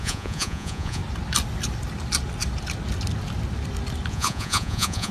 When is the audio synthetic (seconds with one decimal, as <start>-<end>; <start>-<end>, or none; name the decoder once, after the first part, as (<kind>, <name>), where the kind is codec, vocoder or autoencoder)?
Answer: 0.0-1.0 (vocoder, Vocos); 4.1-5.1